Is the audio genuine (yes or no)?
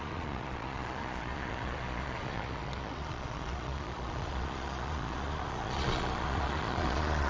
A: no